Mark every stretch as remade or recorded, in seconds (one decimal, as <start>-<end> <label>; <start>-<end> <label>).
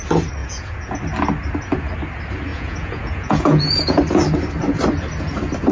0.0-0.4 recorded; 0.4-1.0 remade; 1.0-2.5 recorded; 2.5-4.0 remade; 4.0-5.7 recorded